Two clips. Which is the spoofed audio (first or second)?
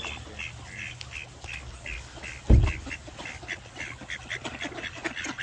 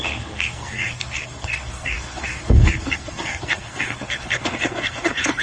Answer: second